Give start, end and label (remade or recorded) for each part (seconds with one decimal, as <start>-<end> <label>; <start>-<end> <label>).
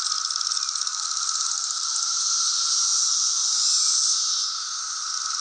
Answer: 0.0-0.9 recorded; 0.9-1.9 remade; 1.9-3.0 recorded; 3.0-4.1 remade; 4.1-5.4 recorded